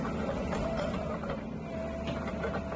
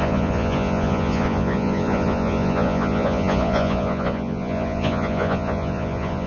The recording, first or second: first